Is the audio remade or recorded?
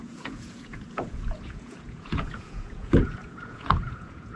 remade